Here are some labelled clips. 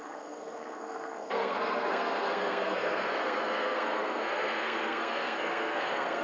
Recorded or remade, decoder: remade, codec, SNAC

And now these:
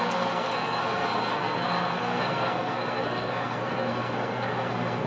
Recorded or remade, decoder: remade, codec, SNAC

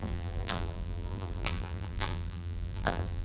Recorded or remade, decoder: remade, vocoder, BigVGAN v2